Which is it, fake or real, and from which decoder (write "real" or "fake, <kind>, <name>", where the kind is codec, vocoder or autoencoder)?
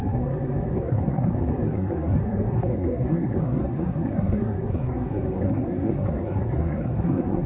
fake, codec, SNAC